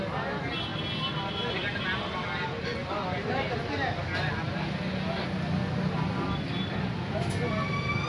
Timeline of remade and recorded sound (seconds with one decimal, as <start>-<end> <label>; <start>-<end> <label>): 0.0-8.1 recorded